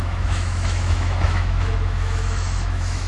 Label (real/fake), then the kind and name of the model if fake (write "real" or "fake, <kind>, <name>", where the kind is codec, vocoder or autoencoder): fake, autoencoder, DAC-VAE